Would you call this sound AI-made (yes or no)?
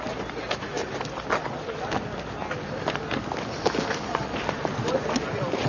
no